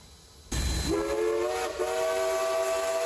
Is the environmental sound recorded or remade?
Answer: recorded